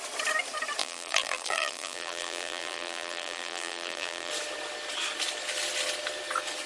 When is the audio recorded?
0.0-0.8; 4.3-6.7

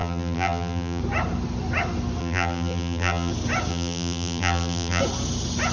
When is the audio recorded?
1.0-2.2; 3.3-3.7; 5.0-5.7

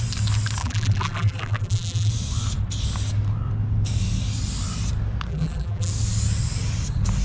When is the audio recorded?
0.0-0.6; 2.1-5.3; 5.9-7.2